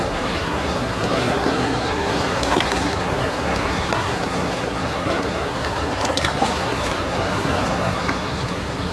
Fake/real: fake